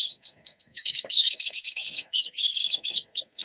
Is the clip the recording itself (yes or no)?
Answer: no